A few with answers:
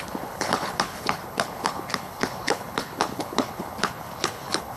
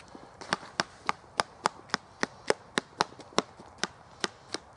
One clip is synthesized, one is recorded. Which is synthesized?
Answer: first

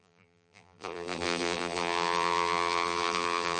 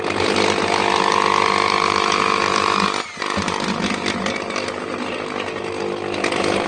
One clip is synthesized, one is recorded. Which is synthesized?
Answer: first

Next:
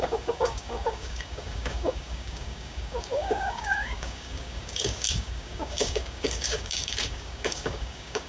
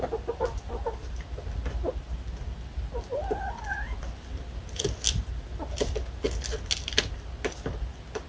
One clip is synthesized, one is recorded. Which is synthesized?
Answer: first